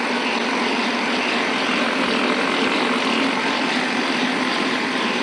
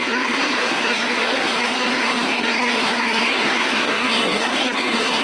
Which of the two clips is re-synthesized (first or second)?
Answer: second